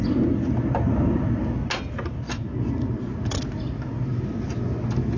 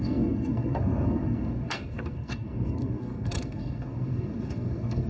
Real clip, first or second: first